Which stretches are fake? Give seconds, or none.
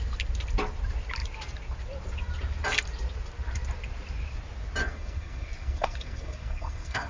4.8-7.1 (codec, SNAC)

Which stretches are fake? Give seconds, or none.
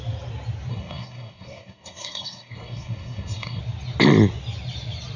0.7-3.6 (codec, SNAC)